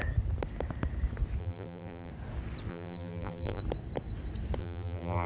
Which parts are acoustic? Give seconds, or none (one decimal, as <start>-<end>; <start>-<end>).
0.0-1.4; 2.1-2.7; 3.6-4.6